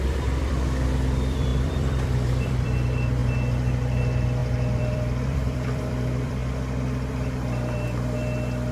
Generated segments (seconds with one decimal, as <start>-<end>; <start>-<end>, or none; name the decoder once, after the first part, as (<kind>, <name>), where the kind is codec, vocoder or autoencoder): 0.0-6.4 (vocoder, BigVGAN v2); 7.1-8.7